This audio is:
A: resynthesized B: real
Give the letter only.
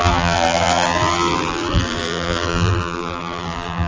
A